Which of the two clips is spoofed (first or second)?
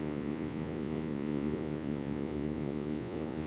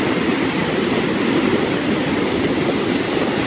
first